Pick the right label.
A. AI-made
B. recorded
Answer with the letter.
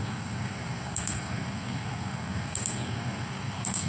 A